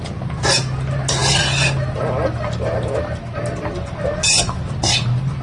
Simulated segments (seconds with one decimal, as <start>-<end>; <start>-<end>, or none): none